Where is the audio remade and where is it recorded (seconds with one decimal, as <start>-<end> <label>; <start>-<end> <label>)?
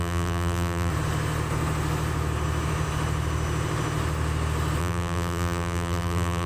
0.0-0.9 remade; 0.9-4.8 recorded; 4.8-6.5 remade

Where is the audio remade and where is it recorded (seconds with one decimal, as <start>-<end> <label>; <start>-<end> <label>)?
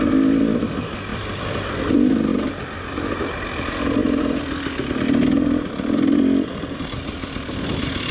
0.0-1.1 recorded; 1.1-1.7 remade; 1.7-8.1 recorded